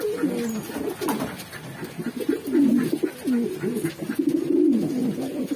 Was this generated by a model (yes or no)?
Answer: no